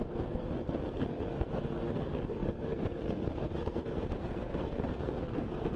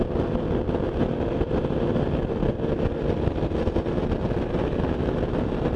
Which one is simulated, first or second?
first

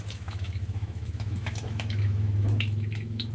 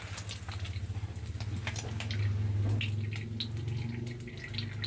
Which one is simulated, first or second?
first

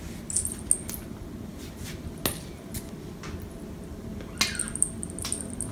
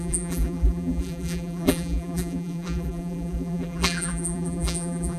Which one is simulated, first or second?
second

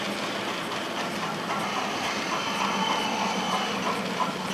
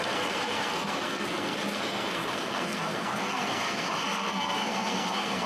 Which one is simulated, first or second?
second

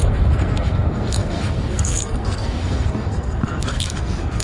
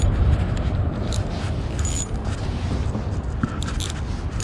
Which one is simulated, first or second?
first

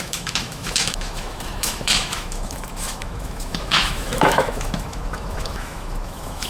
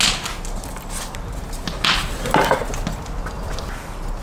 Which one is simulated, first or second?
first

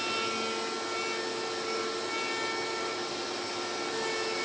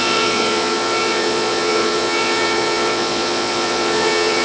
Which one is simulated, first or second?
second